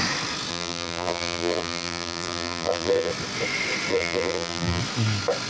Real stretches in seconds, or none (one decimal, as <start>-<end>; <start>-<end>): 0.0-0.5; 3.1-3.9; 4.8-5.5